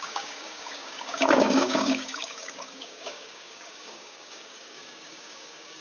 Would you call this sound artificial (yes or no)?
yes